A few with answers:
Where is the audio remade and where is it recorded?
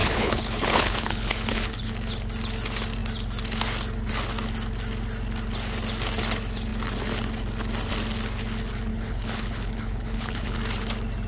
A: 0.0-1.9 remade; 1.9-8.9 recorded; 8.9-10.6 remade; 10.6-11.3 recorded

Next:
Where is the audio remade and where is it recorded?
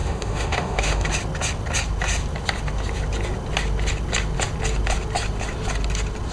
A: 0.0-1.1 remade; 1.1-6.3 recorded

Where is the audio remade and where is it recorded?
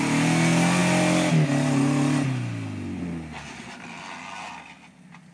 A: 0.0-5.3 recorded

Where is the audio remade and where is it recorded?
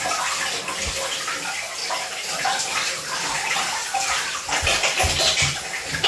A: 0.0-6.1 recorded